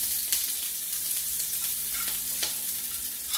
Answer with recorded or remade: remade